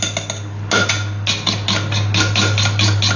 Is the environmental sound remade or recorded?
recorded